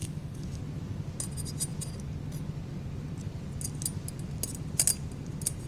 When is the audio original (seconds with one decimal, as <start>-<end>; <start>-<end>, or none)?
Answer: 0.6-5.7